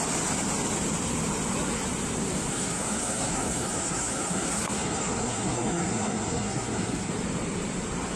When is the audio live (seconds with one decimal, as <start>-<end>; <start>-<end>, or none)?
0.0-2.5; 7.1-8.2